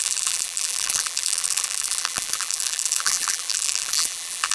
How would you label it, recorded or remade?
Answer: remade